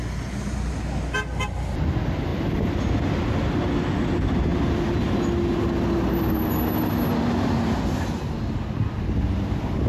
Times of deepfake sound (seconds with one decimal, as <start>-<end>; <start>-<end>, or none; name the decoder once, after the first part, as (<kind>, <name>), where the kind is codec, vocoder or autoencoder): none